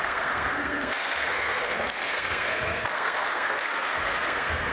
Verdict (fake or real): fake